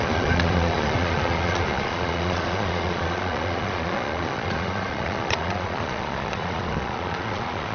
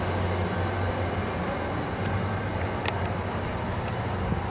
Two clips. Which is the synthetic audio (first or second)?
first